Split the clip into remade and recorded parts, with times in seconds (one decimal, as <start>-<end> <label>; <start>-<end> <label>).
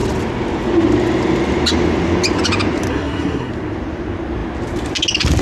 0.0-2.9 recorded; 2.9-3.5 remade; 3.5-5.4 recorded